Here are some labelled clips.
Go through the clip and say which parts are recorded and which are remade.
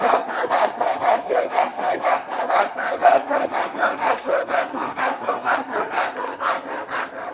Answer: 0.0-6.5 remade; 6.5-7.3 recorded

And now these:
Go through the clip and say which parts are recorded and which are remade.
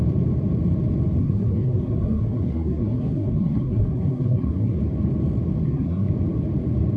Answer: 0.0-1.2 recorded; 1.2-4.8 remade; 4.8-5.6 recorded; 5.6-6.1 remade; 6.1-7.0 recorded